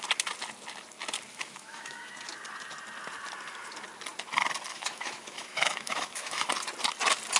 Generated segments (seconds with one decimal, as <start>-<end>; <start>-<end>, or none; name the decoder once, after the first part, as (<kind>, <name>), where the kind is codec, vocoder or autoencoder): 1.3-2.1 (autoencoder, DAC-VAE); 4.7-6.5